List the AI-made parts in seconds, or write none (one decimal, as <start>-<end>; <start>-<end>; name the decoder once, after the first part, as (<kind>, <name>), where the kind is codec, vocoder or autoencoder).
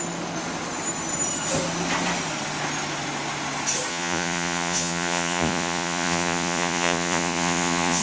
3.9-8.0 (vocoder, Vocos)